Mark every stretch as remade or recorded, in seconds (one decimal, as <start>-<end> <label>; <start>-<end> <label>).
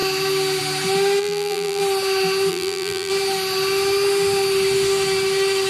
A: 0.0-1.2 recorded; 1.2-1.8 remade; 1.8-2.5 recorded; 2.5-3.1 remade; 3.1-5.7 recorded